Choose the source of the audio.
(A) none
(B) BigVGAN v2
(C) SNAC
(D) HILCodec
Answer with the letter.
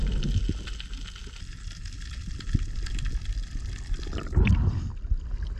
A